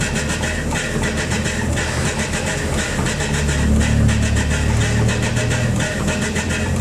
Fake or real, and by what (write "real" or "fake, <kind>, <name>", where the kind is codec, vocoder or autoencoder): real